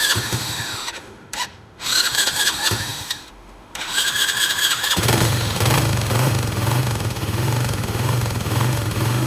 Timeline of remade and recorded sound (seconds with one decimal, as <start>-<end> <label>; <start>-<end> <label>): 0.0-9.3 remade

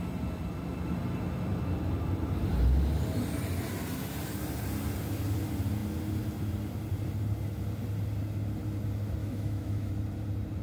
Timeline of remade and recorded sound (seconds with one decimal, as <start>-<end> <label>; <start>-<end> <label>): 0.0-9.2 recorded; 9.2-9.9 remade; 9.9-10.6 recorded

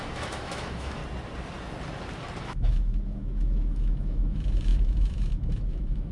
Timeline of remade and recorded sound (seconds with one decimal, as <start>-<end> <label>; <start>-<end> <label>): 0.0-1.0 remade; 1.0-2.4 recorded; 2.4-6.1 remade

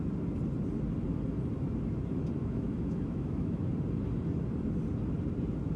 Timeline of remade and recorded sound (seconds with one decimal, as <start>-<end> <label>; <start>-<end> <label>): 0.0-2.4 recorded; 2.4-3.7 remade; 3.7-5.8 recorded

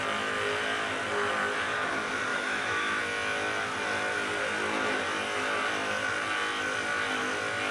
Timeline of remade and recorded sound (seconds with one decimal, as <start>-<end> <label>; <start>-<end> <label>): 0.0-2.3 recorded; 2.3-3.0 remade; 3.0-7.7 recorded